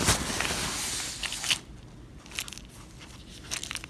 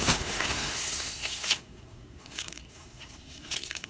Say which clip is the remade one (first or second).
second